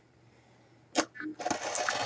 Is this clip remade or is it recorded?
recorded